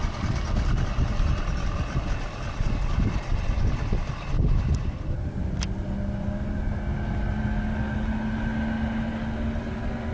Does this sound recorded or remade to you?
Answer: recorded